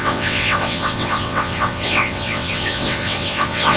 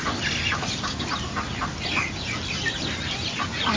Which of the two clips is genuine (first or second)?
second